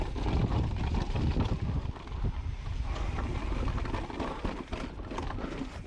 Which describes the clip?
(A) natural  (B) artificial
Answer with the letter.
A